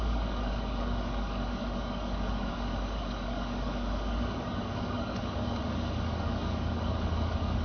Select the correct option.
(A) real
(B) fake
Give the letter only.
B